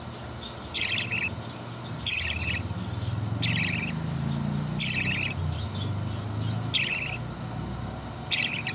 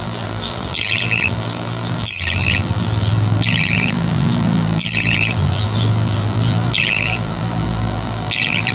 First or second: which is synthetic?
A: second